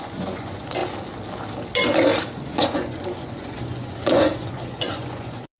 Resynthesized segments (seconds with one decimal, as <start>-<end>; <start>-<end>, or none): 0.0-0.8; 2.3-5.6